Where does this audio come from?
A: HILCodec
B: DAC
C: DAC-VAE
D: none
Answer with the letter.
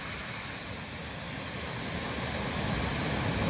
D